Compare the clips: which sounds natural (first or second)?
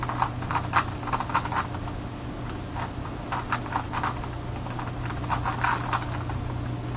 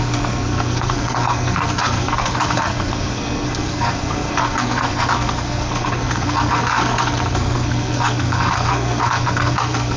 first